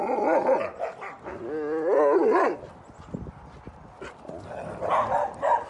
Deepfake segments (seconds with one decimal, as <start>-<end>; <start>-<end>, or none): none